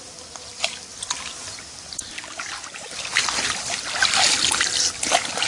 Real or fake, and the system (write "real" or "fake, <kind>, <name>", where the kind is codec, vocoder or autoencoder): real